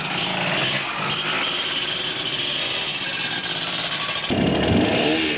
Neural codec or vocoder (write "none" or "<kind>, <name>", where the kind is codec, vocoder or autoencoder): none